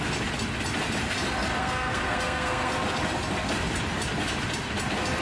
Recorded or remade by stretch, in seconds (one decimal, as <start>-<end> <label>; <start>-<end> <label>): 0.0-1.6 recorded; 1.6-2.7 remade; 2.7-5.2 recorded